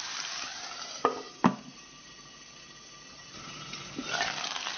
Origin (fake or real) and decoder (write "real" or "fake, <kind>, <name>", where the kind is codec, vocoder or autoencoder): fake, vocoder, BigVGAN v2